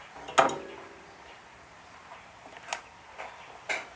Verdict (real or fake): real